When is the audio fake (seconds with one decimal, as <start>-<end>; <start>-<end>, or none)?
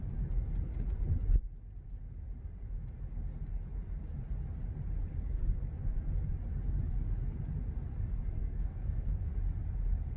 8.4-9.3